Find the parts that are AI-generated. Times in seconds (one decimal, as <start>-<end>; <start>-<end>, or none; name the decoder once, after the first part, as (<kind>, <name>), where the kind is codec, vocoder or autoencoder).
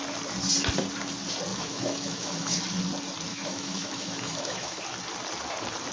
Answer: 1.5-2.6 (autoencoder, DAC-VAE); 3.3-4.8